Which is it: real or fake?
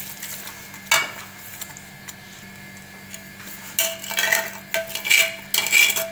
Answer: real